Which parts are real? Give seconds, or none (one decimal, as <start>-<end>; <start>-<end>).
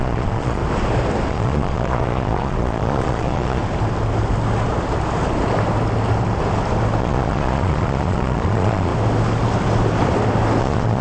0.6-1.3; 3.6-7.0; 8.9-10.6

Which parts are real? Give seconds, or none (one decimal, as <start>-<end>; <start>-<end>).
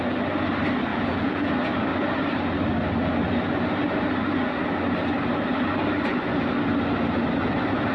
0.0-0.9; 1.5-7.9